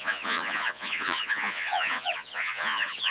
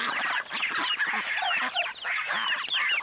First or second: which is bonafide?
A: second